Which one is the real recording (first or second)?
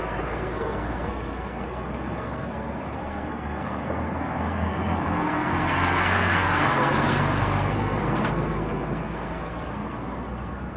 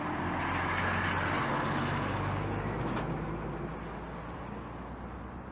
second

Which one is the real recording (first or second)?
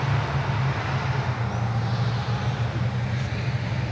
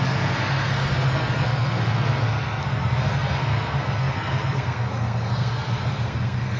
first